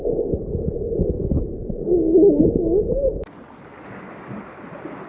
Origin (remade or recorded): recorded